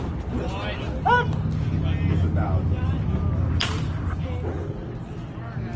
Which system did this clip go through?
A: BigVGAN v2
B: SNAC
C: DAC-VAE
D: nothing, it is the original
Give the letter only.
D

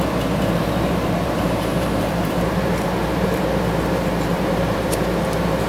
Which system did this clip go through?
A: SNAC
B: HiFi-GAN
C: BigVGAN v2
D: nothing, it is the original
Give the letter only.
C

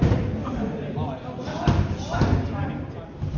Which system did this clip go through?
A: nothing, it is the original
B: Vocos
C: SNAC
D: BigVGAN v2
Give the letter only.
A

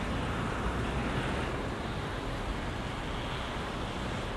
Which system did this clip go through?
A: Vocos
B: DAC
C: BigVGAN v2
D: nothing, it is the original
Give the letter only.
D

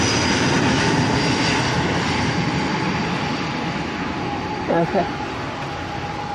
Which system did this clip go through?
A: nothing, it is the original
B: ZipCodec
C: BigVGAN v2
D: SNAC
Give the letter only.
A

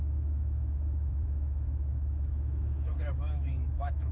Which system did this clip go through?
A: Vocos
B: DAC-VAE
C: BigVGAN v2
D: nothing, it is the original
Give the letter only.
B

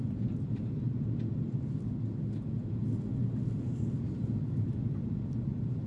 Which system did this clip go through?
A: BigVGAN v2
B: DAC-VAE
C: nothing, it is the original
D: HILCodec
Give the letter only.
C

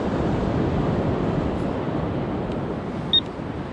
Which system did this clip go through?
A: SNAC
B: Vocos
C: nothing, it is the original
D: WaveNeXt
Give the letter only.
C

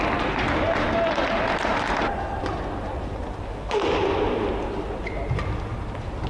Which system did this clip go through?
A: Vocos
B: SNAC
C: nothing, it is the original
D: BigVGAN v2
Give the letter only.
C